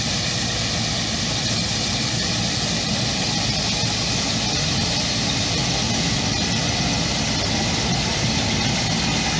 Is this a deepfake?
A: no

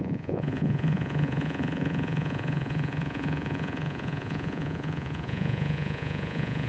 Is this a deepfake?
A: yes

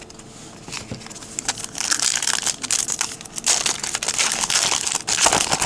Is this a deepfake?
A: no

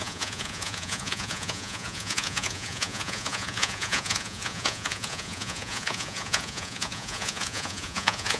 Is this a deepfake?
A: yes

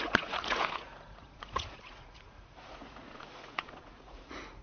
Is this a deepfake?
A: yes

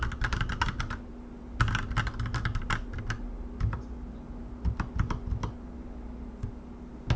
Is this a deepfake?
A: no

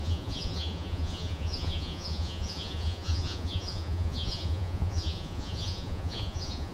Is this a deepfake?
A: yes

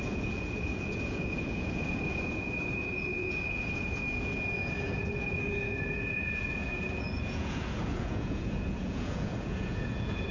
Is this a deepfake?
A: yes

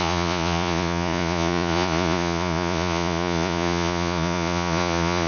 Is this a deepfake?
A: yes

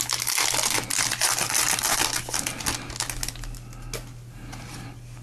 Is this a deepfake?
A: no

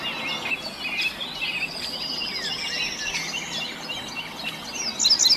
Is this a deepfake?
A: no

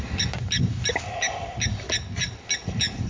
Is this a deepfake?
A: no